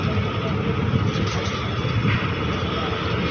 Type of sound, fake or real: real